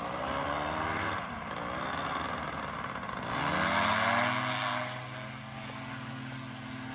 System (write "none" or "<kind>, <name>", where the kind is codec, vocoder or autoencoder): none